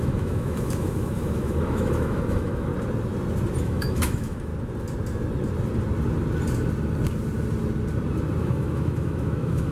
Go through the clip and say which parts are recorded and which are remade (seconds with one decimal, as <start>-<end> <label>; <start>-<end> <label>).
0.0-2.7 remade; 2.7-3.6 recorded; 3.6-4.5 remade; 4.5-8.4 recorded; 8.4-9.7 remade